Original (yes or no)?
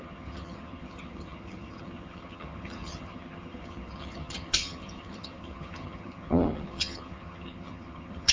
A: no